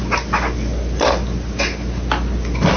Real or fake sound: real